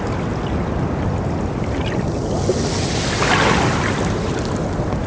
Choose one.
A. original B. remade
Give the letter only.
A